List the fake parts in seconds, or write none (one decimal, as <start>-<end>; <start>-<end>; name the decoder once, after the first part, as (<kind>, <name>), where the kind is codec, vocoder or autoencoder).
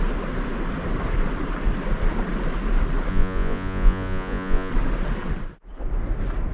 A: 3.1-4.7 (vocoder, Vocos)